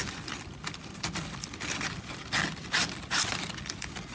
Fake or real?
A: real